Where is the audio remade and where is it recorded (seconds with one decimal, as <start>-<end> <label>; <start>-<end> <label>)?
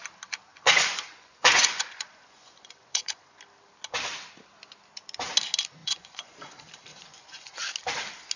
0.0-0.5 recorded; 0.5-3.4 remade; 3.4-5.8 recorded; 5.8-6.5 remade; 6.5-6.9 recorded; 6.9-7.6 remade; 7.6-8.4 recorded